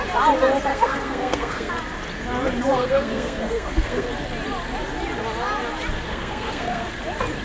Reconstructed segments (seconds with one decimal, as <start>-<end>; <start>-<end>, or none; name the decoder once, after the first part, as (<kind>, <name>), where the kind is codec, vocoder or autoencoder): 0.7-1.7 (codec, SNAC); 2.7-4.1; 6.1-6.9